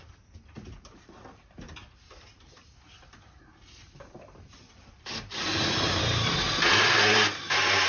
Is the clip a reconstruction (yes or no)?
yes